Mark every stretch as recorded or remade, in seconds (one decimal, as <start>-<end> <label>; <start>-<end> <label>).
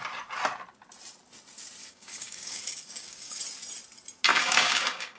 0.0-1.8 recorded; 1.8-3.4 remade; 3.4-4.3 recorded; 4.3-5.2 remade